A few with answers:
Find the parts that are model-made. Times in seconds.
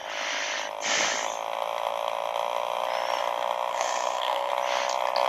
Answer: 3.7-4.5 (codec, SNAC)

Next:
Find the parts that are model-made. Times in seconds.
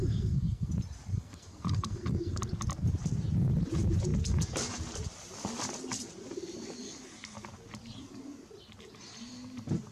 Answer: 0.0-0.7 (codec, SNAC); 1.1-2.4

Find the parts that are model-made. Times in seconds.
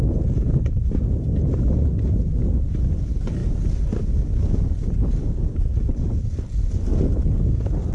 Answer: none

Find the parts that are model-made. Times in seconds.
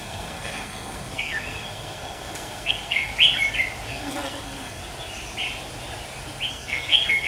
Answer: 0.0-3.1 (codec, SNAC); 3.9-4.8; 6.5-7.3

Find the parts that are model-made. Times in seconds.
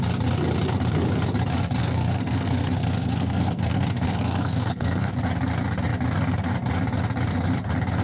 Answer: 1.8-5.1 (codec, SNAC)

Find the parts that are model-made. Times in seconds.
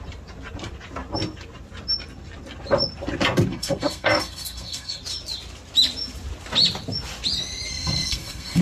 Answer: 3.5-5.0 (codec, SNAC); 7.7-8.6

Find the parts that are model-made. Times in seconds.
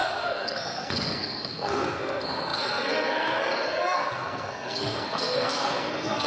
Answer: 0.0-6.3 (codec, SNAC)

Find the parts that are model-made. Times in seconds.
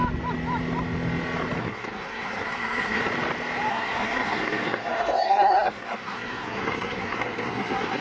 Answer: 1.6-3.0 (codec, SNAC); 3.7-8.0